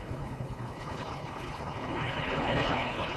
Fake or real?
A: fake